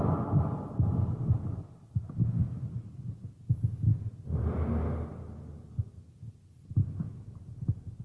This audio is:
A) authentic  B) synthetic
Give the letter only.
A